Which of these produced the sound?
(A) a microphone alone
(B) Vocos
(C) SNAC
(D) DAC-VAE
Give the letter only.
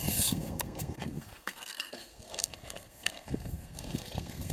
C